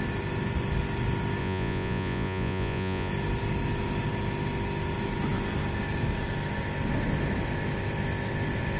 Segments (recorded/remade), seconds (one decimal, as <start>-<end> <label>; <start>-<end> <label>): 0.0-1.4 recorded; 1.4-3.1 remade; 3.1-8.8 recorded